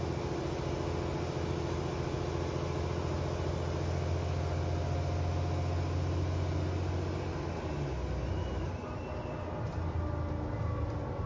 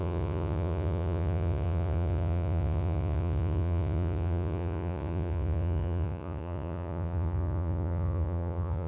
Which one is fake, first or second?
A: second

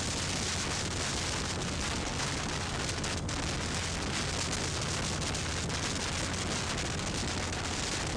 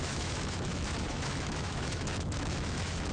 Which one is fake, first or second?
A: second